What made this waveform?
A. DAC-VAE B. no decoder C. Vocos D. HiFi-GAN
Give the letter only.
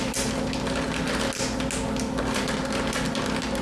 B